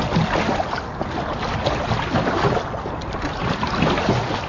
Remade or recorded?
recorded